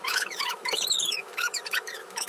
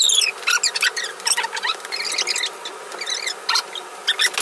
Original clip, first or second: second